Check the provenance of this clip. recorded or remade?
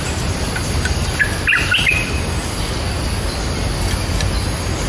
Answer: recorded